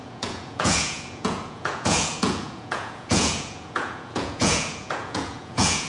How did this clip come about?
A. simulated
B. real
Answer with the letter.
A